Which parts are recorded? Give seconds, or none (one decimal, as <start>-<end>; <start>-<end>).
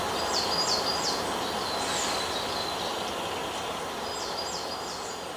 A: 0.0-5.4